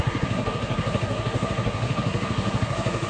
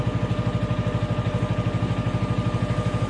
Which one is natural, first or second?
second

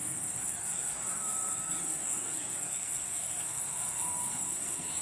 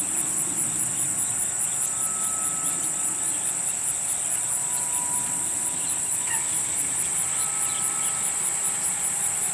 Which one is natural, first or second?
second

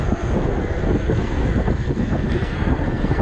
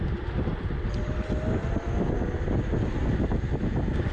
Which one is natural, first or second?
second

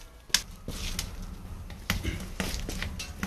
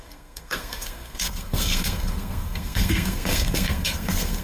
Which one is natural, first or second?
first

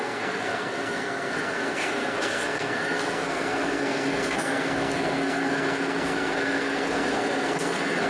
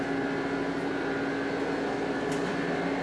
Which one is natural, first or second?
second